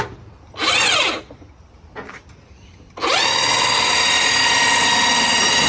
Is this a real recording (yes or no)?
yes